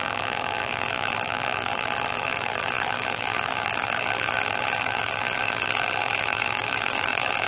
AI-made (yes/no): yes